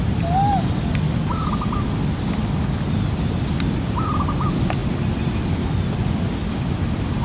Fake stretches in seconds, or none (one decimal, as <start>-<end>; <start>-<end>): none